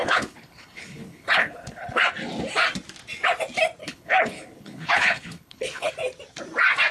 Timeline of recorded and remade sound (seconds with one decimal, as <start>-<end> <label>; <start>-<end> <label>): 0.0-2.0 remade; 2.0-3.8 recorded; 3.8-5.9 remade; 5.9-6.9 recorded